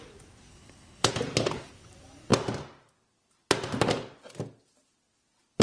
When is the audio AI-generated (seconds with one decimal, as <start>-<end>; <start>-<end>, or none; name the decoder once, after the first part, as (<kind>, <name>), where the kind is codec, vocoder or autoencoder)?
0.5-1.1 (codec, HILCodec)